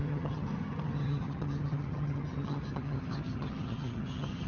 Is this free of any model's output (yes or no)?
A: no